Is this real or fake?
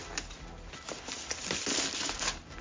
real